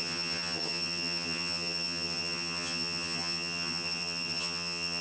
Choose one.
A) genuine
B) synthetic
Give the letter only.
B